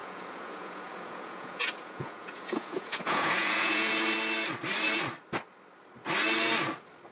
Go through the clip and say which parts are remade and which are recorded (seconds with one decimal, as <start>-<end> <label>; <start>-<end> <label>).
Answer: 0.0-3.9 remade; 3.9-7.1 recorded